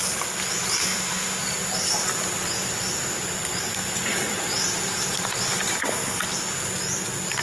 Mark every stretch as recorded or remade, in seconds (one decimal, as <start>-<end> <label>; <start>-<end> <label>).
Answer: 0.0-0.8 recorded; 0.8-1.4 remade; 1.4-7.4 recorded